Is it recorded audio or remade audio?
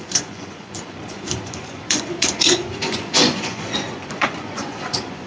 remade